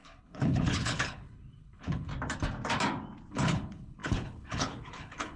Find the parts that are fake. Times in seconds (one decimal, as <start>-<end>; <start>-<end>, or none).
0.0-2.1; 3.3-5.4